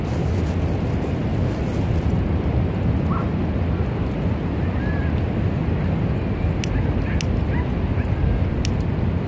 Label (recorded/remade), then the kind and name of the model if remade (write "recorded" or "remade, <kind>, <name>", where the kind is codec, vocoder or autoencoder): recorded